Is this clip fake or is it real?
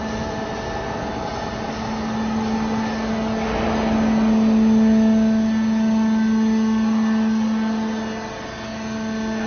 real